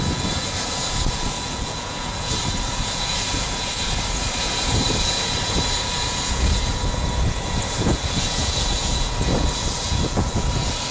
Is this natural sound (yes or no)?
no